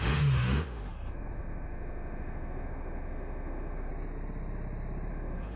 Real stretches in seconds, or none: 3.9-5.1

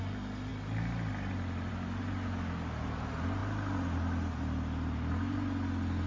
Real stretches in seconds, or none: 0.0-6.1

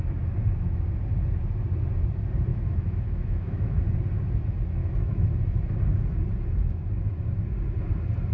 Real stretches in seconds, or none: 0.0-2.5; 3.8-4.8; 5.4-8.3